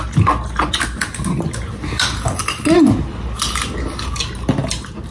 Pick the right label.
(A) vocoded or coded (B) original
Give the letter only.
B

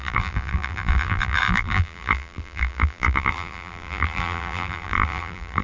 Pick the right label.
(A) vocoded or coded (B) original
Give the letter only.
A